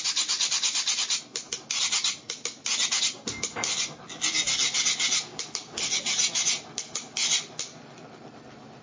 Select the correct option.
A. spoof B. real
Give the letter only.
B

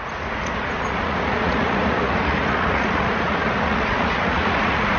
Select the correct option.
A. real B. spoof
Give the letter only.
B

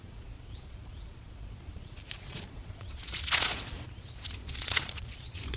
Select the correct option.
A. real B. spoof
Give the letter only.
B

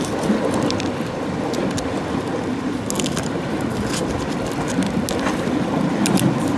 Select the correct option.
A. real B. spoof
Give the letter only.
A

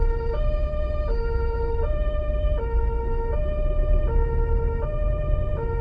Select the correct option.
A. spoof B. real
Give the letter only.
B